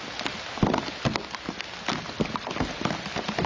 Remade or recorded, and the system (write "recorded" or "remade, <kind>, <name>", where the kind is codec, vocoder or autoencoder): recorded